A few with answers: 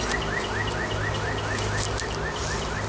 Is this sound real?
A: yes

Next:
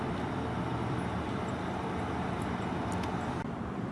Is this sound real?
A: no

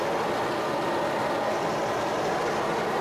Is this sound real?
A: yes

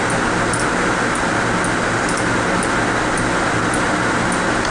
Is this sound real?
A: no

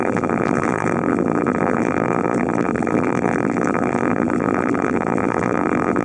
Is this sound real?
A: no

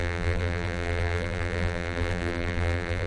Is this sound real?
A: no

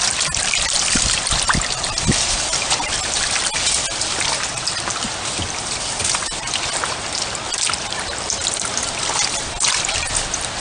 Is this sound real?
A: yes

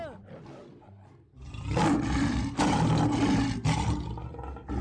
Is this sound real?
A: yes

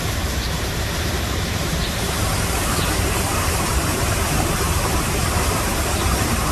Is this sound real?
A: no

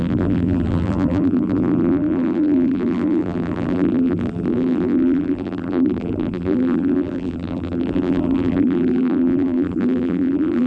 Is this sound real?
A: no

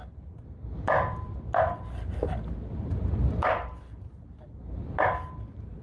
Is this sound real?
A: no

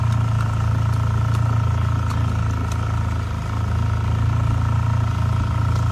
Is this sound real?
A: yes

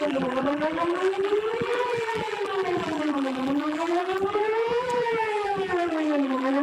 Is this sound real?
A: no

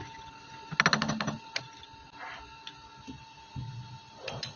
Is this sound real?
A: yes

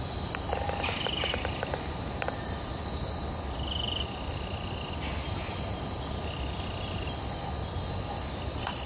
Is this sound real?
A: yes